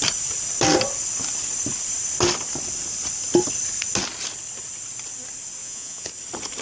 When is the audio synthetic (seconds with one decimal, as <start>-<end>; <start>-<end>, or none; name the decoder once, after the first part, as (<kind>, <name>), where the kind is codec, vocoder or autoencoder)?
5.6-6.1 (vocoder, Vocos)